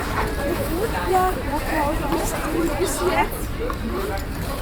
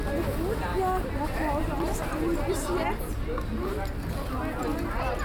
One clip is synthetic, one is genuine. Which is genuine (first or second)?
second